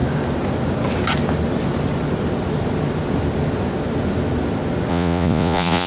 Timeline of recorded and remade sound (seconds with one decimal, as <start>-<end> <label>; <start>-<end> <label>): 0.0-4.9 recorded; 4.9-5.9 remade